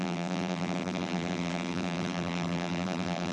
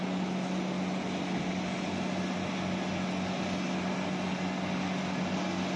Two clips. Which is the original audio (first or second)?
second